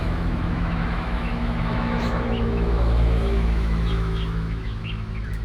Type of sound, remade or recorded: remade